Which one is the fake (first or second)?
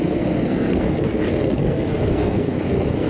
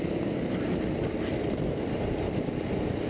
first